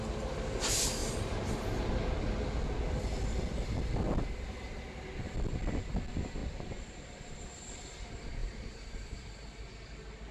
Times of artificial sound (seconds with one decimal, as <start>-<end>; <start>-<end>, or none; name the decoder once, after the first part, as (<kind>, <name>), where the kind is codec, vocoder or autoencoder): 1.0-1.9 (vocoder, BigVGAN v2); 8.4-9.4